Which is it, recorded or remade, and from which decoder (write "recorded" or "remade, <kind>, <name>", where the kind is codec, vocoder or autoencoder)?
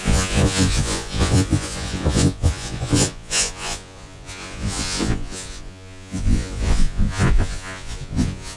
remade, vocoder, Vocos